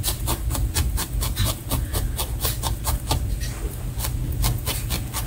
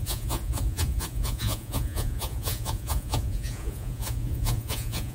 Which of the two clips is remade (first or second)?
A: second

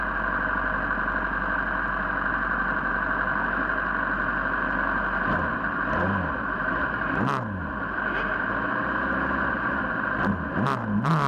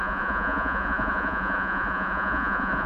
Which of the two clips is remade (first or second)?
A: second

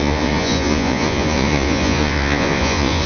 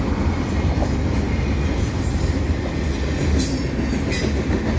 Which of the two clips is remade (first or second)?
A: first